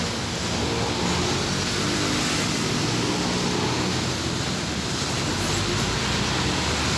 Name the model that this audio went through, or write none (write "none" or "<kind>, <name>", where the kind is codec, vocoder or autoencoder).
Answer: none